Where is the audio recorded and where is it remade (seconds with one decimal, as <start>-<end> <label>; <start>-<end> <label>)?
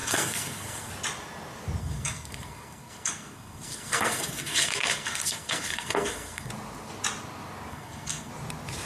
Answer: 0.0-0.9 remade; 0.9-1.8 recorded; 1.8-6.5 remade; 6.5-7.7 recorded; 7.7-8.3 remade; 8.3-8.9 recorded